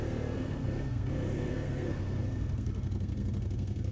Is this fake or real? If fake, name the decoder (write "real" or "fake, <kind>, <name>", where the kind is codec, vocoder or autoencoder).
fake, codec, SNAC